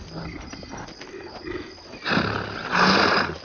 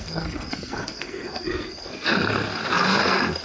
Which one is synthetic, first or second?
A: second